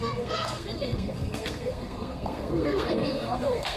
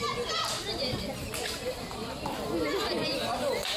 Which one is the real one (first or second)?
second